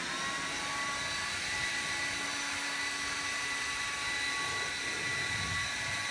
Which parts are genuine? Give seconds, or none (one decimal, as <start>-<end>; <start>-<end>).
0.0-6.1